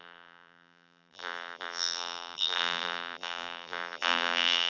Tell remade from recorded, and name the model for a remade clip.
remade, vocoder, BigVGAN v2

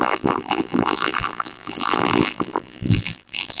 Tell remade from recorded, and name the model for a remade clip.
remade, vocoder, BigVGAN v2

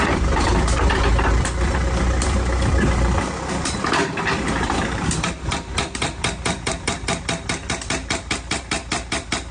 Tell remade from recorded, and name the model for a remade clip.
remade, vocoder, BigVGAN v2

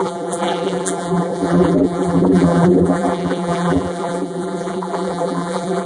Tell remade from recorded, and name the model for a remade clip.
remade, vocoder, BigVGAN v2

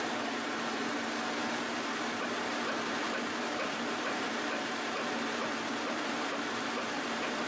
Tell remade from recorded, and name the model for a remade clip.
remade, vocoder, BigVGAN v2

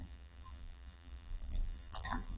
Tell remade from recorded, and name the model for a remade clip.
remade, vocoder, BigVGAN v2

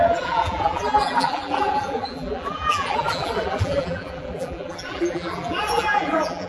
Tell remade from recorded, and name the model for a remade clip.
remade, vocoder, BigVGAN v2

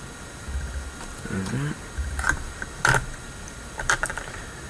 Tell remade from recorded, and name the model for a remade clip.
remade, vocoder, BigVGAN v2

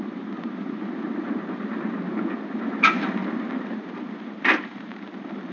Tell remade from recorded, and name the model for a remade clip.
remade, vocoder, BigVGAN v2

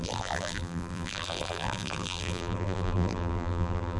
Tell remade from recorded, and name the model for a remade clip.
remade, vocoder, BigVGAN v2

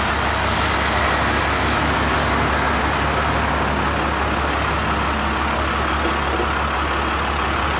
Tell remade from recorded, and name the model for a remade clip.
recorded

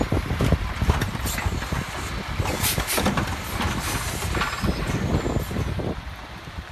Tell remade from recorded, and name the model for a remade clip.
recorded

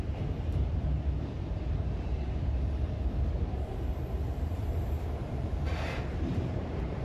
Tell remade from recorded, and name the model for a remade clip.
remade, vocoder, BigVGAN v2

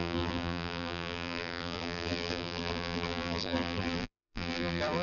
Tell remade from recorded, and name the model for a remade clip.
remade, vocoder, BigVGAN v2